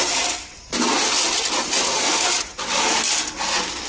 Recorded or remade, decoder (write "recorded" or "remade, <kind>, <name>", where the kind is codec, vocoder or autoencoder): recorded